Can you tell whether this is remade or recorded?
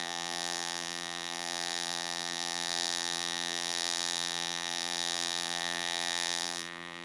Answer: remade